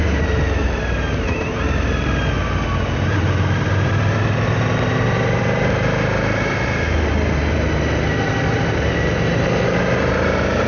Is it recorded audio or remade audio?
recorded